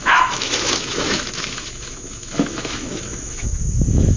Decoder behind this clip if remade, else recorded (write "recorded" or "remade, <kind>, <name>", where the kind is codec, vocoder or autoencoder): remade, autoencoder, DAC-VAE